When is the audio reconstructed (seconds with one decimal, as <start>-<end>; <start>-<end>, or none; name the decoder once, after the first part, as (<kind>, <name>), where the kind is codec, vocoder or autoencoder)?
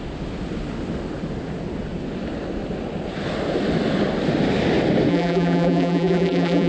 5.1-6.7 (vocoder, BigVGAN v2)